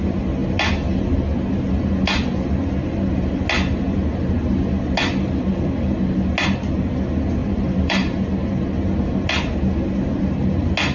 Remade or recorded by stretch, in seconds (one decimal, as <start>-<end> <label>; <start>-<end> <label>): 0.0-7.4 recorded; 7.4-8.3 remade; 8.3-10.9 recorded